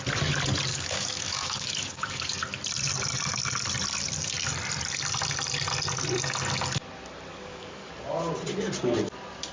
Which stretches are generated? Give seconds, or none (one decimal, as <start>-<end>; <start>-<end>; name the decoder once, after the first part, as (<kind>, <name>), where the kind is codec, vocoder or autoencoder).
0.7-2.3 (codec, DAC); 7.3-7.9

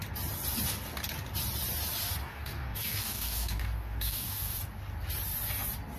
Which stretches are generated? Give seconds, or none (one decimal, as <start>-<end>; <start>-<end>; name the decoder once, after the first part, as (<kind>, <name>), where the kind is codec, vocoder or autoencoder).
2.2-4.6 (codec, DAC)

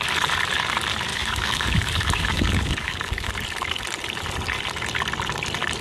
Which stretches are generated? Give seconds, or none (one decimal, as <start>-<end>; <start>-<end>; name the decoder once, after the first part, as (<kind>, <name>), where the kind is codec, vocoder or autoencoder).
1.1-3.3 (codec, DAC)

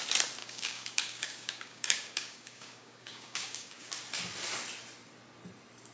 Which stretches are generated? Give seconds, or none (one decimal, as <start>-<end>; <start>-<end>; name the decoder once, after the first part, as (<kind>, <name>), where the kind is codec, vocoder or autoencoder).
0.4-3.9 (codec, DAC)

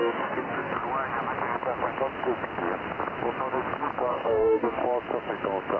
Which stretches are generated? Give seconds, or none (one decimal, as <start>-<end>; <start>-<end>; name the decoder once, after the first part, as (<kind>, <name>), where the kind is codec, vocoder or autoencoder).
0.0-0.8 (codec, DAC); 4.1-4.8